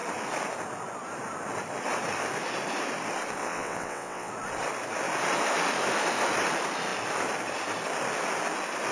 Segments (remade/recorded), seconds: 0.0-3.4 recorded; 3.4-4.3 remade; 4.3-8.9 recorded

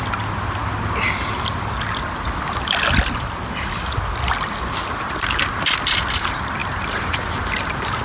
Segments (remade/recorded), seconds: 0.0-8.0 recorded

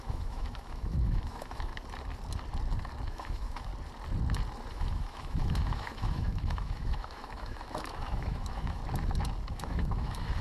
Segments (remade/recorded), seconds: 0.0-1.7 remade; 1.7-3.1 recorded; 3.1-3.7 remade; 3.7-4.7 recorded; 4.7-8.8 remade; 8.8-9.5 recorded; 9.5-10.4 remade

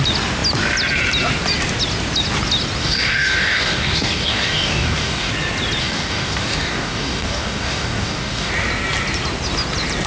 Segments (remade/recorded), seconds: 0.0-2.8 recorded; 2.8-5.3 remade; 5.3-5.8 recorded; 5.8-8.5 remade; 8.5-10.1 recorded